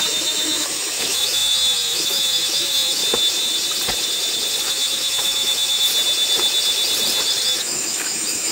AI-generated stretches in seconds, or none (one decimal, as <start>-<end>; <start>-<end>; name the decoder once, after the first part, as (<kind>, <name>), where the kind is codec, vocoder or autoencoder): 0.0-3.0 (autoencoder, DAC-VAE); 4.6-5.9; 7.4-8.5